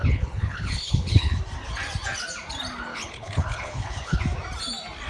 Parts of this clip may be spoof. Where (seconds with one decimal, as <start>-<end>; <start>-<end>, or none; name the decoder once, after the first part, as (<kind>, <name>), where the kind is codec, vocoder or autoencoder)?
0.0-1.4 (codec, HILCodec); 2.9-4.2